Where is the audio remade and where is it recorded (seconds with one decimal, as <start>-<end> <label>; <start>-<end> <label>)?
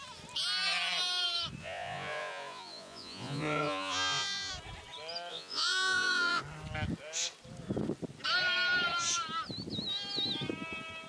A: 0.0-1.6 recorded; 1.6-4.5 remade; 4.5-5.3 recorded; 5.3-6.4 remade; 6.4-11.1 recorded